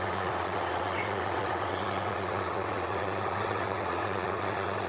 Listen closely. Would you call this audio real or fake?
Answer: fake